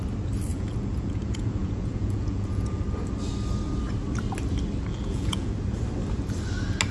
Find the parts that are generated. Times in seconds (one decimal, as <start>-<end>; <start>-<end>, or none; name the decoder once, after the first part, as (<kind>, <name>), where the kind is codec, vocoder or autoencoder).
0.5-2.8 (vocoder, Vocos); 4.9-5.5